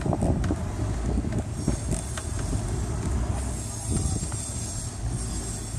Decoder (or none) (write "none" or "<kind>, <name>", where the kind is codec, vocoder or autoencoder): none